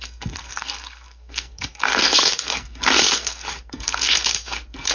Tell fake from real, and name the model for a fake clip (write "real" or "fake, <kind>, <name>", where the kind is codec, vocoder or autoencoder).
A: fake, codec, SNAC